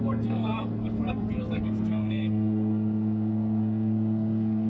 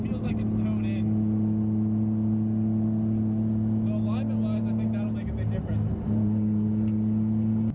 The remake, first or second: first